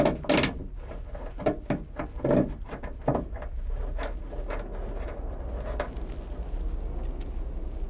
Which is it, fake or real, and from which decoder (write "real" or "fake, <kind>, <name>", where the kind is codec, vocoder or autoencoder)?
real